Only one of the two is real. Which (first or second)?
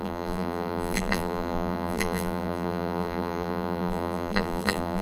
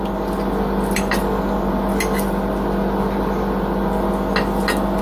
second